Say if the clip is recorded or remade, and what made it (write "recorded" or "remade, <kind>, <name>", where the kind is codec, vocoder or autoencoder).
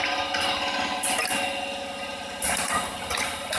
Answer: recorded